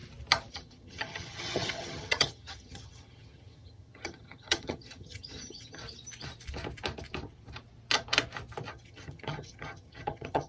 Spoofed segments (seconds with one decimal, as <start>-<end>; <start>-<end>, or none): 0.5-5.8; 8.7-10.5